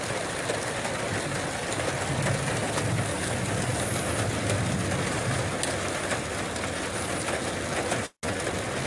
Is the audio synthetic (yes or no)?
no